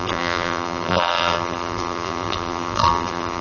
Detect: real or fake fake